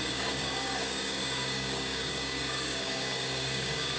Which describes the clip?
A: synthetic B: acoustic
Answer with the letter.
A